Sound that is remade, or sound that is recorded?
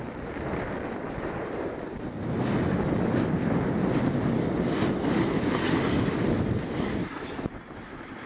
recorded